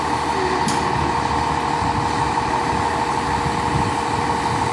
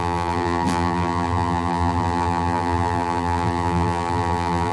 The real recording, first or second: first